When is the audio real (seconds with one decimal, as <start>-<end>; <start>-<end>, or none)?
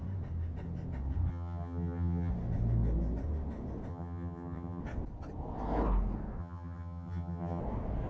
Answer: 0.0-1.3; 2.3-3.9; 4.8-6.4; 7.6-8.1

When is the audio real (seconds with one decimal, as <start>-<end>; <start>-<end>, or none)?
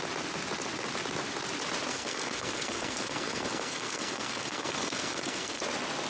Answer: 0.0-1.9; 5.6-6.1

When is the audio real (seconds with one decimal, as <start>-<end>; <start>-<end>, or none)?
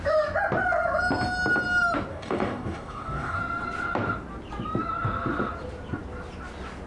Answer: 0.0-2.1; 3.4-6.9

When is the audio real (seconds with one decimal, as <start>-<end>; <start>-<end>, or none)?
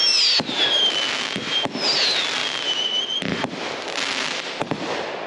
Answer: 0.0-5.3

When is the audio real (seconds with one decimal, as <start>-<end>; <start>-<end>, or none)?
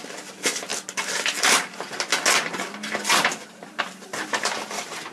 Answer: 0.0-5.1